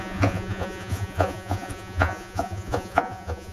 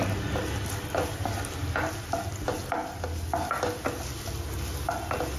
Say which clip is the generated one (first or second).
first